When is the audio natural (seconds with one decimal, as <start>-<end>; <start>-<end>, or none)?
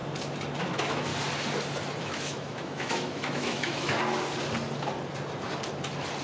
0.0-0.6; 1.1-2.0; 4.0-6.2